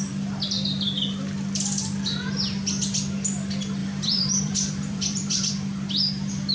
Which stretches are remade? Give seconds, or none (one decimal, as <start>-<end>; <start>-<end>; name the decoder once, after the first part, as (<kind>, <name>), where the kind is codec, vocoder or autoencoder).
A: 3.8-5.5 (vocoder, BigVGAN v2)